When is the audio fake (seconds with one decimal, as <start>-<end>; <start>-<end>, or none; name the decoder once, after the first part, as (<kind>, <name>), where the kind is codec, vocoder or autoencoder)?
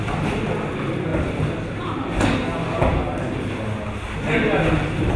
none